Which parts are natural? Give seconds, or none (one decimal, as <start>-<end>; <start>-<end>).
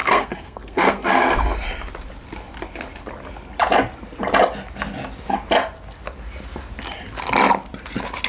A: 1.4-8.3